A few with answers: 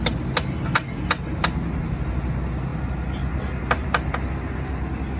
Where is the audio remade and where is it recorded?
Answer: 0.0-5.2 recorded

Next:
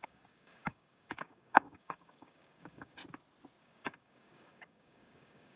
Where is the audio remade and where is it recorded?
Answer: 0.0-3.0 remade; 3.0-3.6 recorded; 3.6-5.6 remade

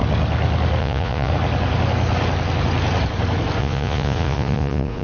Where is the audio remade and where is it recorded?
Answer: 0.0-0.8 recorded; 0.8-1.3 remade; 1.3-3.6 recorded; 3.6-5.0 remade

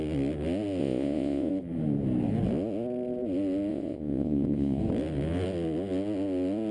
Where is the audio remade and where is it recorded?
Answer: 0.0-0.8 recorded; 0.8-1.5 remade; 1.5-3.7 recorded; 3.7-4.8 remade; 4.8-6.7 recorded

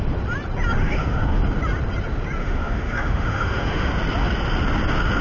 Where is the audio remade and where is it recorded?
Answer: 0.0-0.8 recorded; 0.8-1.4 remade; 1.4-2.4 recorded; 2.4-3.9 remade; 3.9-5.2 recorded

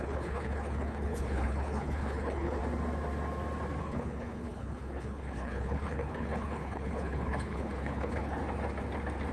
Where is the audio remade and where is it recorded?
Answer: 0.0-2.6 remade; 2.6-3.8 recorded; 3.8-8.4 remade; 8.4-9.3 recorded